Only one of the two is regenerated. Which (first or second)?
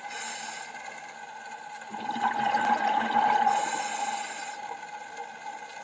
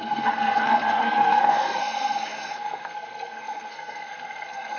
second